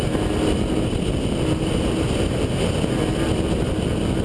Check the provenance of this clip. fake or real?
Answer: real